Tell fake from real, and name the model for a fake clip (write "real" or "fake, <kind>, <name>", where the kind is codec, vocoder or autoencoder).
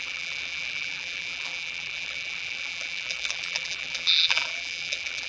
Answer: fake, vocoder, BigVGAN v2